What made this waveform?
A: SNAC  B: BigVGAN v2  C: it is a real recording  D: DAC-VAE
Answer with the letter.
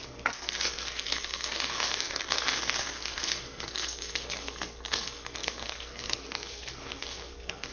A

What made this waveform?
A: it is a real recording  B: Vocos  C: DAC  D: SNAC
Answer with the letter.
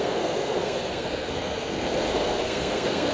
D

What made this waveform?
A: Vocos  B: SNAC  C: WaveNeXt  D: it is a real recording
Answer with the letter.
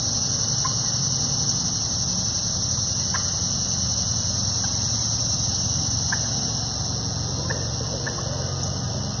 D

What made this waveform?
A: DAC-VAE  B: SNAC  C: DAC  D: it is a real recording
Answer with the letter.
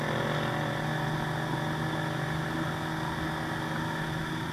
D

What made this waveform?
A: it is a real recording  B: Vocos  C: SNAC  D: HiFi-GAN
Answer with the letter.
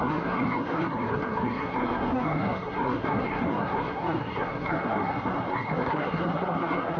C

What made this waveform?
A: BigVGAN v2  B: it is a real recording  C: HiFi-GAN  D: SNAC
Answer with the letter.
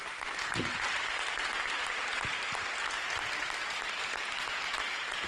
B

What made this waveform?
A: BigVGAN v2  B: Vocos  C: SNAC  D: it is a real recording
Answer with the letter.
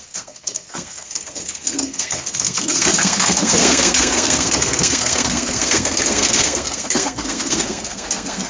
C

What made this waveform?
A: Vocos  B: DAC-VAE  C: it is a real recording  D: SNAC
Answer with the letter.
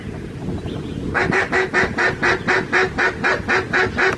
C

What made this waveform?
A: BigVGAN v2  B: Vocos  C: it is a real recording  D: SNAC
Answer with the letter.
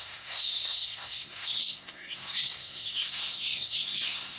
D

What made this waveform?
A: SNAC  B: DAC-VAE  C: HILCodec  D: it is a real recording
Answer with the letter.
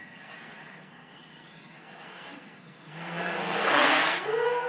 A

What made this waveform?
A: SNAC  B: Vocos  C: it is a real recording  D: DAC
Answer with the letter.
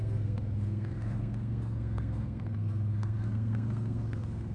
A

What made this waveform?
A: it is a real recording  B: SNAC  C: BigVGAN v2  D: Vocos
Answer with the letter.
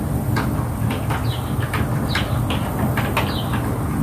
A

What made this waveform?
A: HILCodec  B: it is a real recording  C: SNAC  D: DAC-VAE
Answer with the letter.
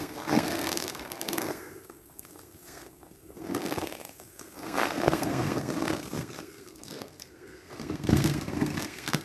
C